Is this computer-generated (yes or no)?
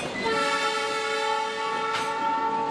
no